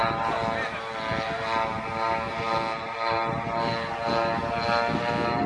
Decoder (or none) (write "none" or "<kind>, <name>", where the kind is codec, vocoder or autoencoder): none